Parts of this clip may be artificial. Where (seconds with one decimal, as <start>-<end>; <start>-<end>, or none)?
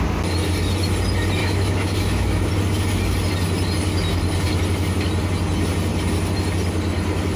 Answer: 1.4-2.5